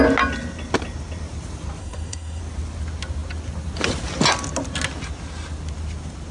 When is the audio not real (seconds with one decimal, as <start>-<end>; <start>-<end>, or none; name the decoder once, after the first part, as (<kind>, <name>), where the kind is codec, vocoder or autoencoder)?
1.8-2.4 (codec, SNAC)